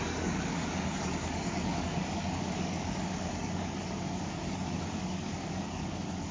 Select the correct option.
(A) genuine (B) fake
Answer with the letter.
B